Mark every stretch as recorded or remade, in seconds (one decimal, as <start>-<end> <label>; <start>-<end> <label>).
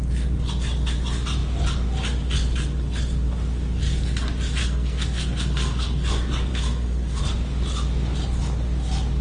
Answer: 0.0-4.6 recorded; 4.6-6.1 remade; 6.1-6.5 recorded; 6.5-7.2 remade; 7.2-9.2 recorded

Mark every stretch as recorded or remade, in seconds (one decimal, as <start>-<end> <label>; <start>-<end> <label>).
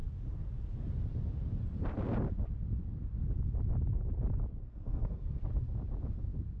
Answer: 0.0-4.6 recorded; 4.6-5.4 remade; 5.4-6.6 recorded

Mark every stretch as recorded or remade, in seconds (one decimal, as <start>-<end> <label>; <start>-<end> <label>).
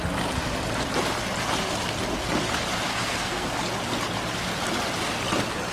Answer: 0.0-2.9 recorded; 2.9-3.5 remade; 3.5-5.7 recorded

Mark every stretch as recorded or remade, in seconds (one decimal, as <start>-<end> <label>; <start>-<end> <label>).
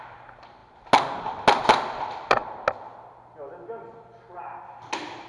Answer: 0.0-5.3 recorded